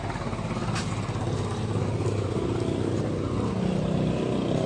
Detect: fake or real real